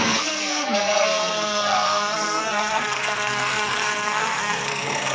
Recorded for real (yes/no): no